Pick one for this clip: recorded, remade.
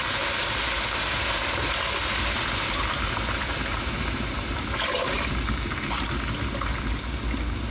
recorded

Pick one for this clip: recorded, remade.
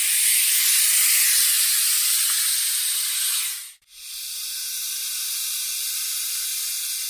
recorded